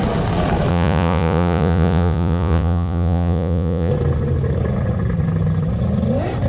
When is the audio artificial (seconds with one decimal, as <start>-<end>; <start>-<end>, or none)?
0.7-3.9